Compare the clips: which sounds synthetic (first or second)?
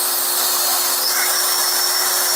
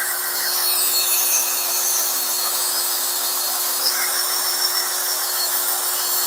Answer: second